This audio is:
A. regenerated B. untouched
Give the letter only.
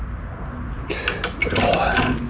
B